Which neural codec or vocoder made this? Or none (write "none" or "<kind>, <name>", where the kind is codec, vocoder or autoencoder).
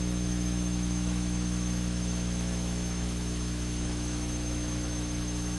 autoencoder, DAC-VAE